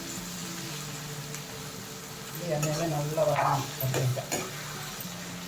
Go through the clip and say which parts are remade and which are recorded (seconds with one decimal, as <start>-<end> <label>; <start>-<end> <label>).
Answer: 0.0-5.5 recorded